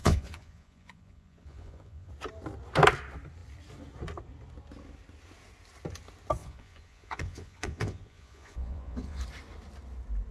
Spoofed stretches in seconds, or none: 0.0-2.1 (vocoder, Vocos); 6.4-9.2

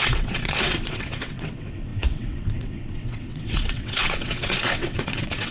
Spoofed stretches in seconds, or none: 0.0-5.5 (vocoder, WaveNeXt)

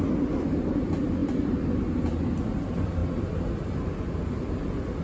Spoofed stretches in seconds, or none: 0.0-1.2 (vocoder, BigVGAN v2); 2.4-3.0; 4.1-5.0

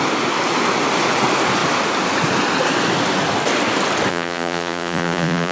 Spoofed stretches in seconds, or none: 4.1-5.5 (vocoder, Vocos)

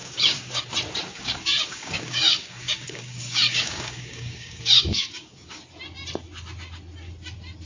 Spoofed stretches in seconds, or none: 0.0-0.6 (codec, DAC); 1.1-5.6

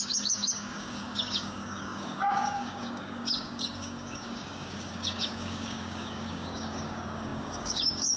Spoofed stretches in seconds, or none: 0.0-8.2 (codec, DAC)

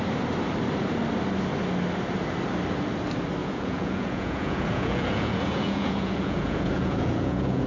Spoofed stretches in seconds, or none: 3.4-7.7 (vocoder, Vocos)